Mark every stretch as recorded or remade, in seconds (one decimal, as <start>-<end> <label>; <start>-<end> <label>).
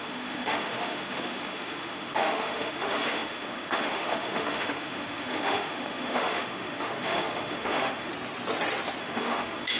0.0-8.1 remade; 8.1-9.0 recorded; 9.0-9.8 remade